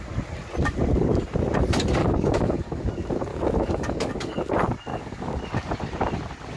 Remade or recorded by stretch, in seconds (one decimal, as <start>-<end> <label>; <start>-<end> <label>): 0.0-2.0 recorded; 2.0-2.9 remade; 2.9-3.3 recorded; 3.3-4.5 remade; 4.5-4.9 recorded; 4.9-5.4 remade; 5.4-6.6 recorded